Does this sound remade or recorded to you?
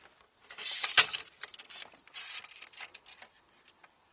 recorded